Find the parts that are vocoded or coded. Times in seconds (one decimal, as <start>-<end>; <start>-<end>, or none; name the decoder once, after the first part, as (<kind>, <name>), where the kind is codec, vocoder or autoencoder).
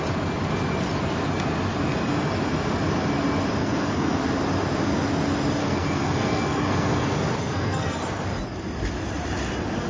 3.6-4.2 (codec, SNAC); 5.6-7.0; 7.4-8.0